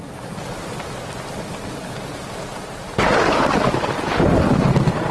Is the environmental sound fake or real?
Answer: real